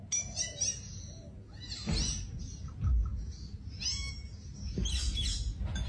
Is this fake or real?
real